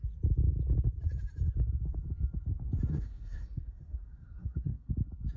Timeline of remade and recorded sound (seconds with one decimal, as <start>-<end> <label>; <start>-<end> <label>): 0.0-2.9 recorded; 2.9-4.9 remade; 4.9-5.4 recorded